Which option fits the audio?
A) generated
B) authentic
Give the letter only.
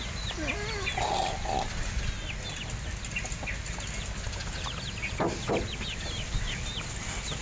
B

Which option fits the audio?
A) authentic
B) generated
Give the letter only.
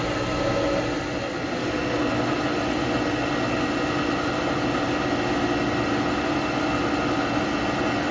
A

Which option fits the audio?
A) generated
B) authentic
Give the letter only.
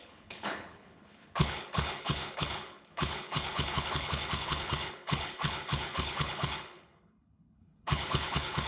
A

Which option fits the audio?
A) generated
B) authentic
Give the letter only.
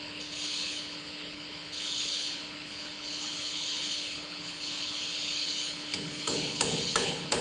A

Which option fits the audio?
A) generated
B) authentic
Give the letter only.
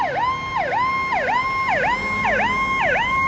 B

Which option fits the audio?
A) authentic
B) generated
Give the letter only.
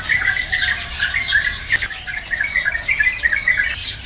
A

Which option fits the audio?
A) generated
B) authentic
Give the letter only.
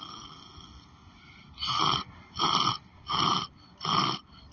B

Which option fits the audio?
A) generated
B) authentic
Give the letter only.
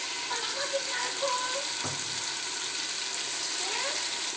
B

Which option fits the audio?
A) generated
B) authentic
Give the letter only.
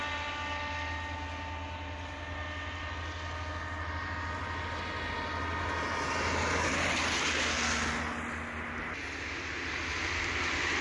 B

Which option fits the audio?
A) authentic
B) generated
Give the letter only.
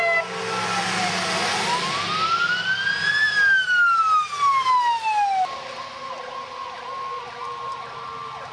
A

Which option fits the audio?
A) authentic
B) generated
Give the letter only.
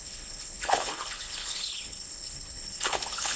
B